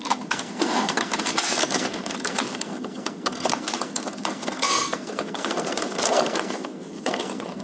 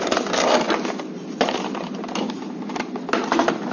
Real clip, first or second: second